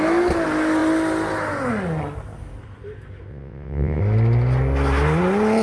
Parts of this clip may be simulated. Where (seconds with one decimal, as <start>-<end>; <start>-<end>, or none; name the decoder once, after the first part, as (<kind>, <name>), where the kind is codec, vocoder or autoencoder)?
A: 3.3-4.0 (vocoder, WaveNeXt)